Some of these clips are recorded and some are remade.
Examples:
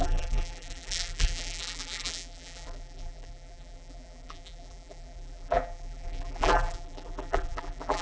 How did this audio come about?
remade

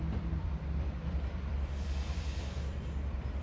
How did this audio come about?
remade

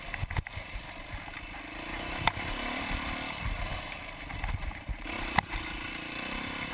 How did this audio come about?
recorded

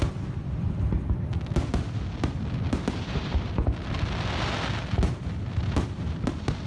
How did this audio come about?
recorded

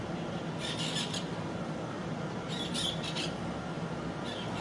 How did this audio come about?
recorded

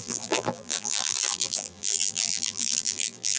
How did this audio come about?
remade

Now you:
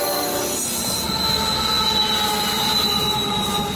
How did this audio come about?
recorded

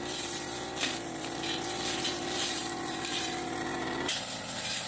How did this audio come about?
remade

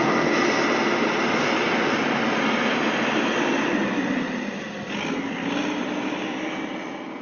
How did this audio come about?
recorded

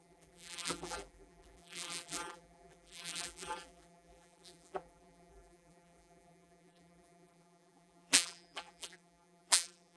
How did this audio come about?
remade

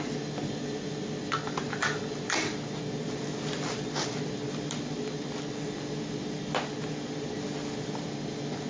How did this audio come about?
recorded